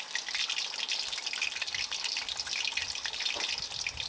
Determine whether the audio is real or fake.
real